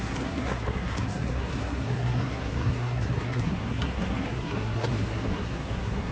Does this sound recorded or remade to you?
remade